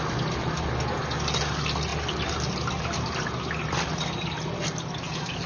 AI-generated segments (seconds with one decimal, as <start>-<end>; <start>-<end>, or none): none